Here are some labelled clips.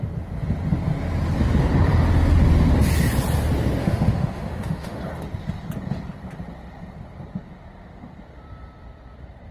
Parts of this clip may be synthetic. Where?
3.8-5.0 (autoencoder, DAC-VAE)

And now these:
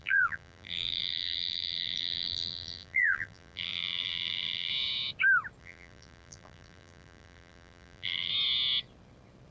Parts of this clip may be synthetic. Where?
0.0-4.7 (vocoder, BigVGAN v2); 5.6-8.3

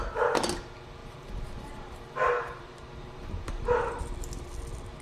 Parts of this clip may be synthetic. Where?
1.0-4.0 (vocoder, BigVGAN v2)